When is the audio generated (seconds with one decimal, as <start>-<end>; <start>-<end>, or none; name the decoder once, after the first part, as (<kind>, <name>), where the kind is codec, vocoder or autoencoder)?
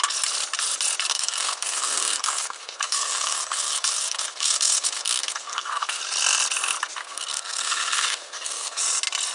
1.1-6.0 (codec, SNAC); 7.0-8.8